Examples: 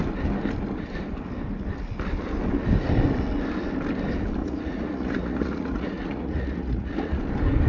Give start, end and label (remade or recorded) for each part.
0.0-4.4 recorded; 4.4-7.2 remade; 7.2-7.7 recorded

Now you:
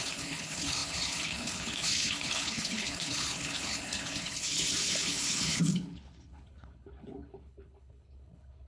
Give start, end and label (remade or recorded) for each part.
0.0-8.7 remade

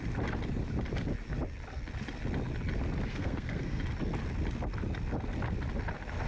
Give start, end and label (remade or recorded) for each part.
0.0-3.1 recorded; 3.1-3.8 remade; 3.8-6.3 recorded

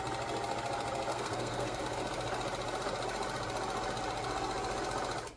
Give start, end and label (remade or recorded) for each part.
0.0-1.1 recorded; 1.1-1.8 remade; 1.8-5.4 recorded